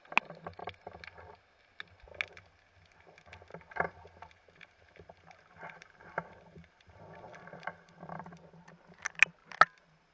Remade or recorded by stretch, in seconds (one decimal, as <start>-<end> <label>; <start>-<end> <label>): 0.0-3.5 recorded; 3.5-8.2 remade; 8.2-10.1 recorded